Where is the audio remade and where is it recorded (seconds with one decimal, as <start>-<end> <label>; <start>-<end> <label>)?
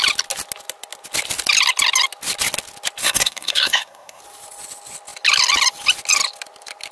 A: 0.0-3.0 recorded; 3.0-4.2 remade; 4.2-6.9 recorded